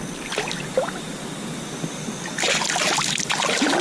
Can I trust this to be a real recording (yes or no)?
yes